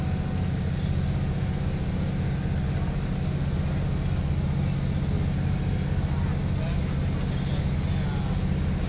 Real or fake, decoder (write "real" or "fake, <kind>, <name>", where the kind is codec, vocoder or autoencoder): real